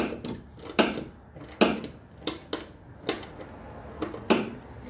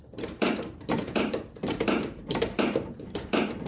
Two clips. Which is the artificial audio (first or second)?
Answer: second